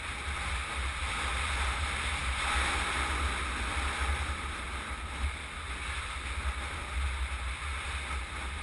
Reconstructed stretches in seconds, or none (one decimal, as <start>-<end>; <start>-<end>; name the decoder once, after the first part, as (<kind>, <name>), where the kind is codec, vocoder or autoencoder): none